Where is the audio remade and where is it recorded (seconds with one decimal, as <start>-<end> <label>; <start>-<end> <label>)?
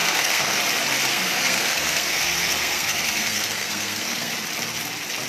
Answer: 0.0-0.6 remade; 0.6-1.1 recorded; 1.1-4.3 remade; 4.3-5.3 recorded